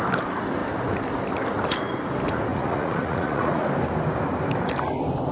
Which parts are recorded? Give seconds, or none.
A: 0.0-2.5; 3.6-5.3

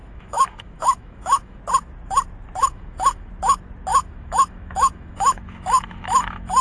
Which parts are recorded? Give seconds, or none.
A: 1.6-2.6; 3.3-3.9

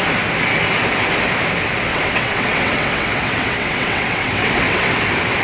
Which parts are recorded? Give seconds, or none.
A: 0.0-1.9; 4.9-5.4

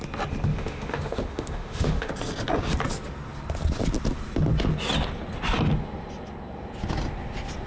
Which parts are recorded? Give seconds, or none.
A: 0.0-0.5; 2.1-7.7

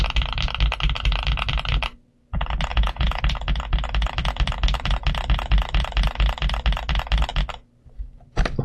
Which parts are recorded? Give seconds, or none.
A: 0.0-2.7; 3.2-8.6

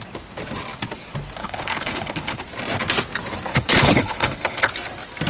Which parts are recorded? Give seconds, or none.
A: 0.0-1.4; 2.4-3.5; 4.7-5.3

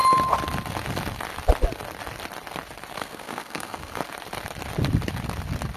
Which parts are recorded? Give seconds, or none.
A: 0.0-3.0; 4.0-5.8

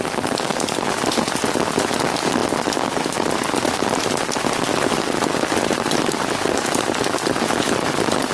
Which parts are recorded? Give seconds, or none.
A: 2.4-4.0